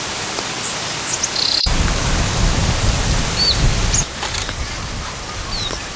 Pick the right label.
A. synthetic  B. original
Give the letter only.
B